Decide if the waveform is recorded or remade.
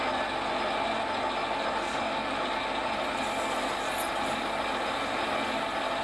recorded